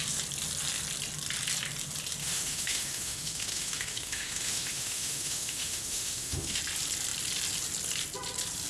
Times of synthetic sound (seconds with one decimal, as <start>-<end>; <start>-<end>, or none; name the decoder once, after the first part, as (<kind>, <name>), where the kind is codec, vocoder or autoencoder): 2.2-6.6 (autoencoder, DAC-VAE)